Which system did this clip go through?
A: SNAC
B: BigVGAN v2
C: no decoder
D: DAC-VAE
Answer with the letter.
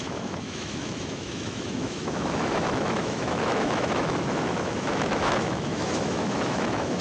D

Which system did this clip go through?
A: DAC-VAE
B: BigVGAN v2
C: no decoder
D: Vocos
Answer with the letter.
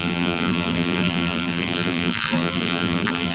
B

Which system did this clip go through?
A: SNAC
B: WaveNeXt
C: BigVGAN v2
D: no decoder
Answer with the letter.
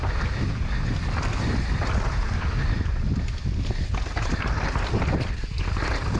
D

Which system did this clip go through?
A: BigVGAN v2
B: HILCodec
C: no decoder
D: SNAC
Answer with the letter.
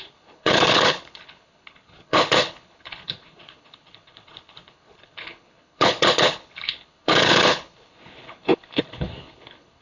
B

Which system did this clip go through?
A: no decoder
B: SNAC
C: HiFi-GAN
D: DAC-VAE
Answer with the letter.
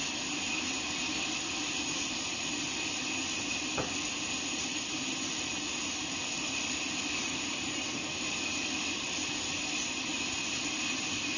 A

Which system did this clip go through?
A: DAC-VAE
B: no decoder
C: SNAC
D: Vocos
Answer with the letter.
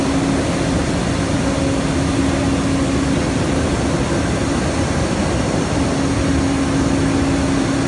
B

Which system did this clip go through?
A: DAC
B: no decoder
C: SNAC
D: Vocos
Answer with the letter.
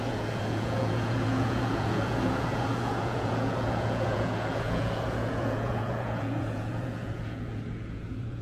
D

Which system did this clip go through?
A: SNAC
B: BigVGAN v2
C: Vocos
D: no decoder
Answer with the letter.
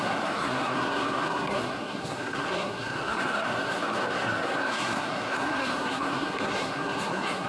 A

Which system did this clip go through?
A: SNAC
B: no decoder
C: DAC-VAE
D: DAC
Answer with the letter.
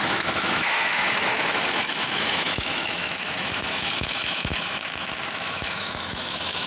C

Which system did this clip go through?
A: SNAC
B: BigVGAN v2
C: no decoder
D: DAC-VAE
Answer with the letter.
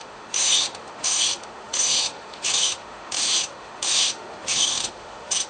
D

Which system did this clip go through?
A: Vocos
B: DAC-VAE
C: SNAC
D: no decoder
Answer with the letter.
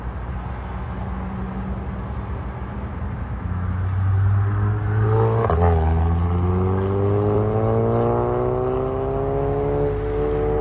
D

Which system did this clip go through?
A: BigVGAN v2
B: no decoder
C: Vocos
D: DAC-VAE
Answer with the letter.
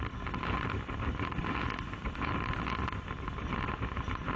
B